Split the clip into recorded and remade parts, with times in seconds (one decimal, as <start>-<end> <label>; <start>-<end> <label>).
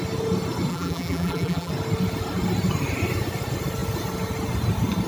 0.0-0.7 recorded; 0.7-1.7 remade; 1.7-5.1 recorded